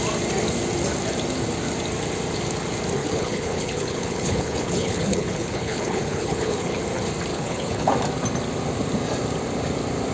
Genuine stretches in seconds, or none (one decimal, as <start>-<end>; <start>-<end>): 0.0-3.0; 6.8-7.3; 7.9-10.1